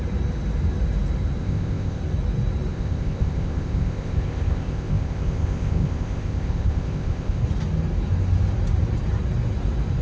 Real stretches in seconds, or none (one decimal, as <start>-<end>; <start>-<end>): 0.0-1.4; 2.0-2.7; 7.4-10.0